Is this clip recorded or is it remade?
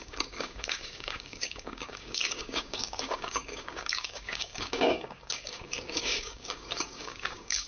remade